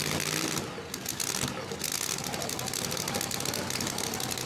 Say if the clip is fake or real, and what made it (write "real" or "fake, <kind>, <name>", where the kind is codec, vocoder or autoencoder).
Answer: real